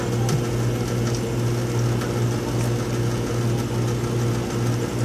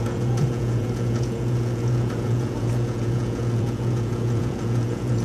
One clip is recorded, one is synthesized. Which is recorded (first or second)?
first